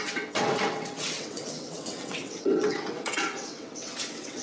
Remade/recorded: remade